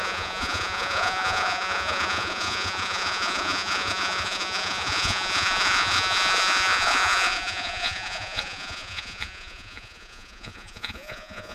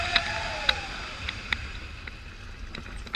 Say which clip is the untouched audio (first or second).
second